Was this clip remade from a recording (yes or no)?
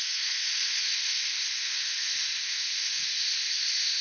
yes